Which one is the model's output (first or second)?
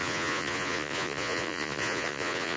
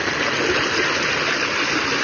first